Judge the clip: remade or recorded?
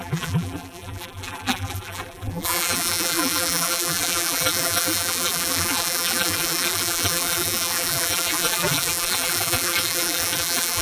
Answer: remade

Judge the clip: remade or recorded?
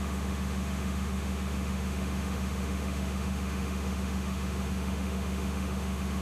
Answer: remade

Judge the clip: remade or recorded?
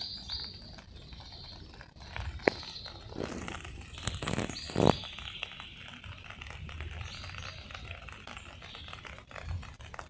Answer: recorded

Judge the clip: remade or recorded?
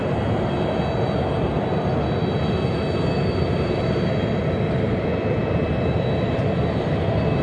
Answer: recorded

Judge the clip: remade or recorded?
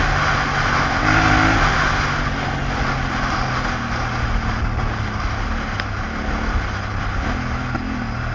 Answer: recorded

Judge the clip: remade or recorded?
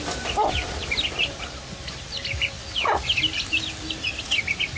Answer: recorded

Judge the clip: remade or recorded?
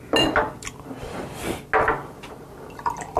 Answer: recorded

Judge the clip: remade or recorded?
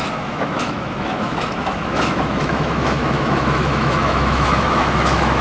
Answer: remade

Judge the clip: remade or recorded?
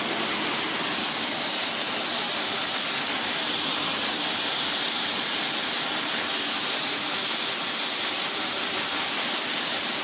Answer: recorded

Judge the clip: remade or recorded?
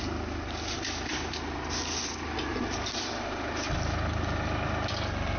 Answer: recorded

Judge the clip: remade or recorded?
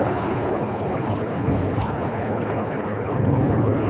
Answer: remade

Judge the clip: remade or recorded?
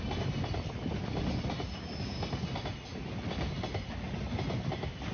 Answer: recorded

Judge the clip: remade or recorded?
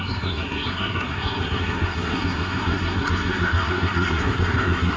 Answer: remade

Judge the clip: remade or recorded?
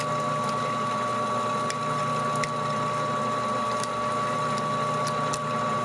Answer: recorded